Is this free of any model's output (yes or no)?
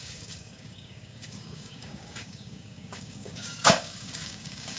no